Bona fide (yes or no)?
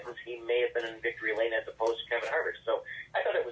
yes